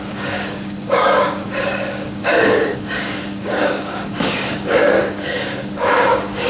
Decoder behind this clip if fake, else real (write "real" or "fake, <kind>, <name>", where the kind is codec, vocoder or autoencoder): fake, codec, DAC